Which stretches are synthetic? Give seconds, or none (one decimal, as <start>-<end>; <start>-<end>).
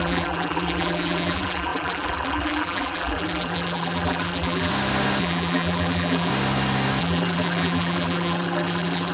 0.0-4.7; 5.2-6.3; 7.0-9.1